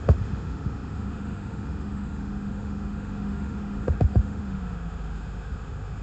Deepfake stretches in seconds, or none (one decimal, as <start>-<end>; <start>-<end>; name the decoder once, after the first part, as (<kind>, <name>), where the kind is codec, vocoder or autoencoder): 0.0-6.0 (autoencoder, DAC-VAE)